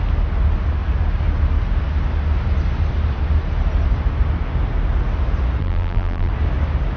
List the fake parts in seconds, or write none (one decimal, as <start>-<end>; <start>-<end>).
5.6-6.3